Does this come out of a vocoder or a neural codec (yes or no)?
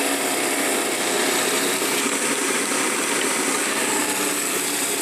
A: no